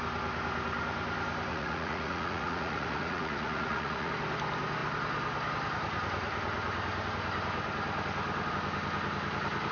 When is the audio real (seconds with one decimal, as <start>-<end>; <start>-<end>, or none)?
0.0-1.5; 4.1-9.7